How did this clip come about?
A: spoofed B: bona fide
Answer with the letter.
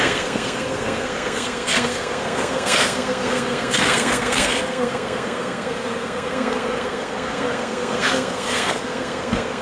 A